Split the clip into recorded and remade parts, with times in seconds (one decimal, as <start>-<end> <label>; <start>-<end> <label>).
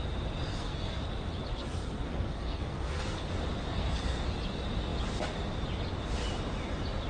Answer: 0.0-0.5 recorded; 0.5-1.0 remade; 1.0-1.5 recorded; 1.5-3.3 remade; 3.3-3.7 recorded; 3.7-4.3 remade; 4.3-7.1 recorded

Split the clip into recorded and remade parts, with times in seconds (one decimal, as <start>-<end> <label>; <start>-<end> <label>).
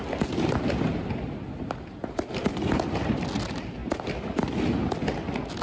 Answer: 0.0-5.6 recorded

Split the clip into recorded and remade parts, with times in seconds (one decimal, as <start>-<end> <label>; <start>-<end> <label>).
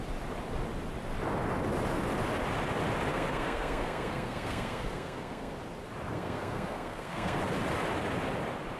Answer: 0.0-3.1 recorded; 3.1-5.5 remade; 5.5-6.1 recorded; 6.1-7.4 remade; 7.4-8.8 recorded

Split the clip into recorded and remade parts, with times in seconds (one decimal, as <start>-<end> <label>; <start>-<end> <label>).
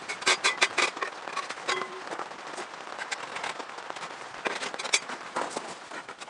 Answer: 0.0-6.3 recorded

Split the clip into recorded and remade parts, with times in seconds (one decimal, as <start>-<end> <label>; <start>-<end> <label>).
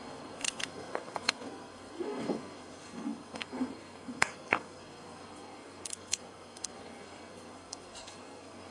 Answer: 0.0-8.7 remade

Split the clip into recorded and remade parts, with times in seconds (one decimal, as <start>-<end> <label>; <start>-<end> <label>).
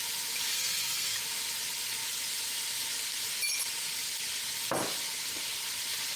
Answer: 0.0-0.5 recorded; 0.5-1.2 remade; 1.2-6.2 recorded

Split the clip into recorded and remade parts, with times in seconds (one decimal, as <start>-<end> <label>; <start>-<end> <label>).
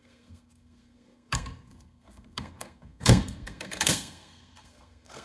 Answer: 0.0-5.2 remade